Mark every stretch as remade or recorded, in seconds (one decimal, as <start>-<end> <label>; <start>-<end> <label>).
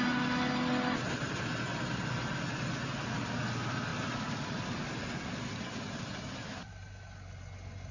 0.0-3.9 recorded; 3.9-6.9 remade; 6.9-7.9 recorded